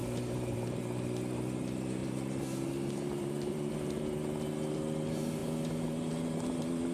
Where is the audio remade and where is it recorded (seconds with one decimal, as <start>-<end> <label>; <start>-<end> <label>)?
0.0-0.8 remade; 0.8-2.0 recorded; 2.0-3.7 remade; 3.7-6.9 recorded